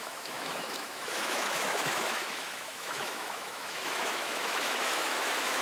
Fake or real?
fake